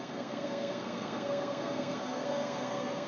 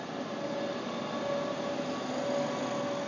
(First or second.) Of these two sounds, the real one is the second